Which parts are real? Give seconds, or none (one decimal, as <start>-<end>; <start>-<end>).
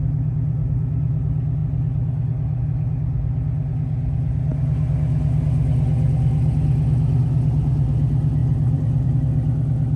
0.0-8.4; 9.1-10.0